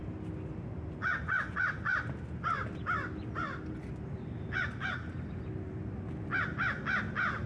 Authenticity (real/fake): real